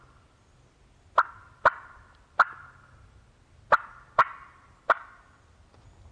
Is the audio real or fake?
fake